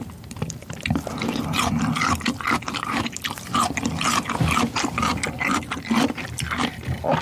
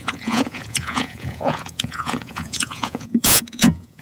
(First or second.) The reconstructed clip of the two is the second